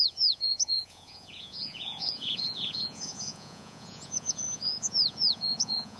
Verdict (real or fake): fake